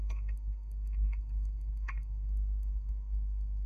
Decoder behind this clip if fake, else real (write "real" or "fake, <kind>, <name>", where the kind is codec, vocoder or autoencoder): fake, codec, SNAC